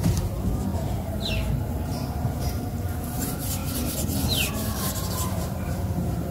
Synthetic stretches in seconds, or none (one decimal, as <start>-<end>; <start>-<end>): 0.0-3.6; 4.9-6.3